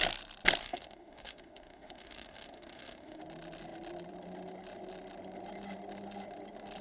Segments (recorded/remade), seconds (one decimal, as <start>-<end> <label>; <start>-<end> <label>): 0.0-0.6 recorded; 0.6-3.2 remade; 3.2-6.8 recorded